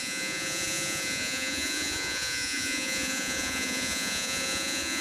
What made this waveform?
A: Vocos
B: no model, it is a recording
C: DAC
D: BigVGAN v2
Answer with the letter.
A